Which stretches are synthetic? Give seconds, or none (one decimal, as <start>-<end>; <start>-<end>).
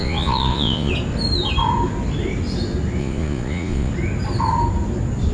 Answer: 0.0-0.9; 3.0-3.9